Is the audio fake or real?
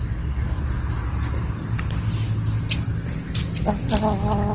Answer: real